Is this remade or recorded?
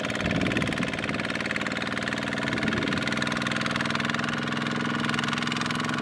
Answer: recorded